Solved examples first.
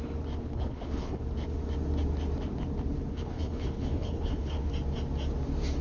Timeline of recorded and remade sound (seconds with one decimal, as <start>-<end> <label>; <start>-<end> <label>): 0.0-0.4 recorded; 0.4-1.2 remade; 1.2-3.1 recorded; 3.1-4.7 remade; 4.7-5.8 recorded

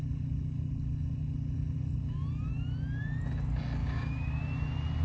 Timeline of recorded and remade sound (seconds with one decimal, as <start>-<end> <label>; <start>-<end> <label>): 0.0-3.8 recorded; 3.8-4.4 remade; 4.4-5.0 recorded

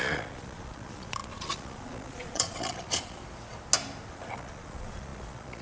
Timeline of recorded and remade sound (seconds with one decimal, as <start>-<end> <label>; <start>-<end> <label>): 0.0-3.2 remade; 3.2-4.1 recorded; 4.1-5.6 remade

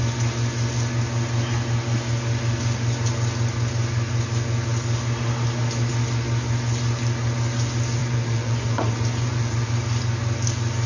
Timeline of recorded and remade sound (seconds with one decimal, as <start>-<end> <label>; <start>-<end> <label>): 0.0-8.0 recorded; 8.0-9.7 remade; 9.7-10.9 recorded

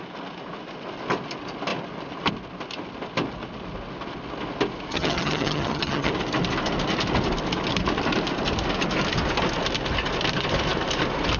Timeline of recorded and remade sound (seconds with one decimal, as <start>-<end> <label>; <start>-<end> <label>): 0.0-4.9 recorded; 4.9-6.1 remade; 6.1-11.4 recorded

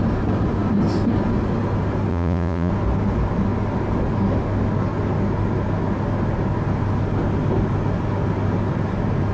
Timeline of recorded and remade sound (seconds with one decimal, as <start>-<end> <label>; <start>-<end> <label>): 0.0-2.1 recorded; 2.1-2.7 remade; 2.7-9.3 recorded

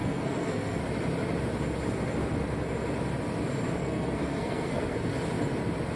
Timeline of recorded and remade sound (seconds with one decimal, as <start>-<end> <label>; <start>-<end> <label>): 0.0-0.8 remade; 0.8-3.8 recorded; 3.8-5.1 remade; 5.1-6.0 recorded